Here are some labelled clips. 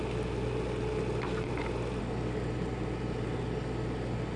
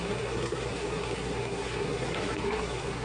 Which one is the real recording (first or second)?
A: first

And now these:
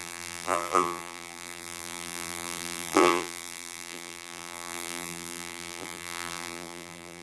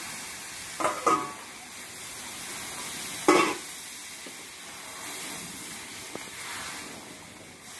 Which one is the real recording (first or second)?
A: second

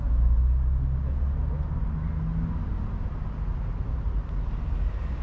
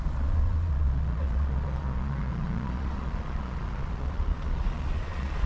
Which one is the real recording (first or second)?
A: first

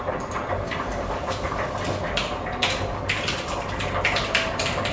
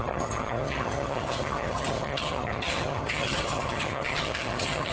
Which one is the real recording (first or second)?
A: first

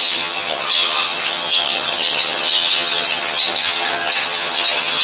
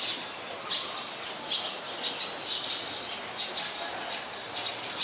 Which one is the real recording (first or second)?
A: second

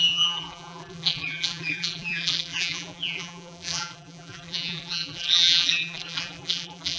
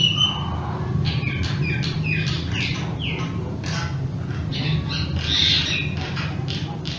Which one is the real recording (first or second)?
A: second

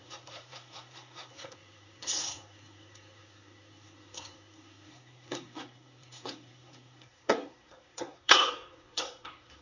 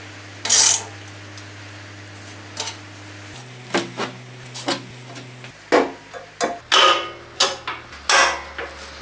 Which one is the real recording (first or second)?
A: second